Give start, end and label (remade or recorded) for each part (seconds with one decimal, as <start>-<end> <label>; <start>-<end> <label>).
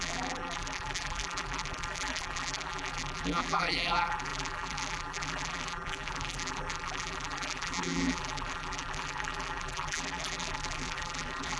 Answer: 0.0-11.6 remade